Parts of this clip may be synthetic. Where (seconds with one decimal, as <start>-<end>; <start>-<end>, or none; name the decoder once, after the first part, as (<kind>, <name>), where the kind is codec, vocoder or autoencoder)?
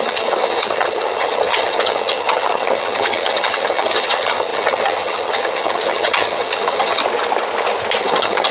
0.0-7.0 (vocoder, HiFi-GAN); 8.0-8.5